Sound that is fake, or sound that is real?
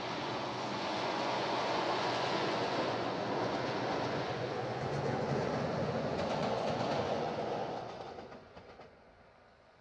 fake